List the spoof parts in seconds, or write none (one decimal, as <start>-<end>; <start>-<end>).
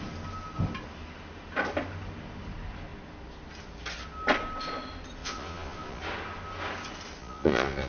5.2-6.0; 7.2-7.9